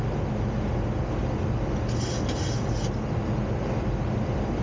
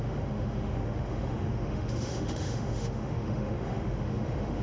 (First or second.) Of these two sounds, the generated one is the second